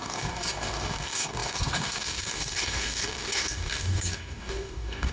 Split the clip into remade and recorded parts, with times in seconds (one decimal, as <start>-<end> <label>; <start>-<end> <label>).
0.0-5.1 remade